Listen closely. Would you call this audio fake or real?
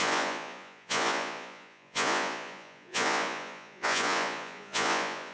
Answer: fake